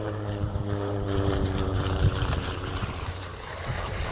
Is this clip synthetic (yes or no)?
yes